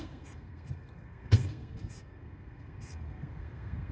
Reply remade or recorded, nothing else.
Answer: remade